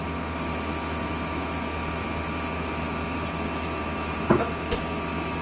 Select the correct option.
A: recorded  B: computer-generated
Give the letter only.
A